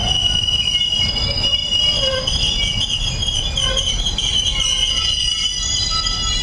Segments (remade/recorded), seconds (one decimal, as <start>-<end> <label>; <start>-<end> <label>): 0.0-6.4 recorded